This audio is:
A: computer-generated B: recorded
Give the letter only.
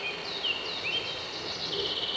B